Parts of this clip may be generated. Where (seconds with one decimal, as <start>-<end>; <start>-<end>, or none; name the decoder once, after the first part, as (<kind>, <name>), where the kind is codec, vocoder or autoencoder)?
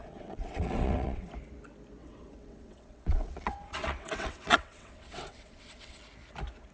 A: 0.0-1.3 (vocoder, WaveNeXt); 2.0-6.0